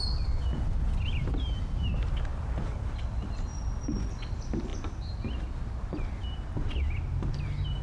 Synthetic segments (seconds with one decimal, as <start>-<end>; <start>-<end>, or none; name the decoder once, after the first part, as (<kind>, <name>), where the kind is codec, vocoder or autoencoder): none